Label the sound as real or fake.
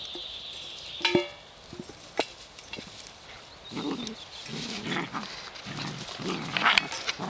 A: real